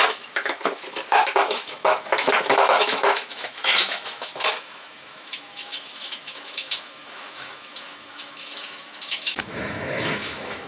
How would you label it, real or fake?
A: fake